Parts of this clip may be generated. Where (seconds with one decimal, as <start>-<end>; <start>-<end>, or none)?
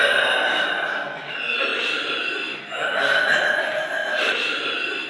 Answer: 1.7-5.1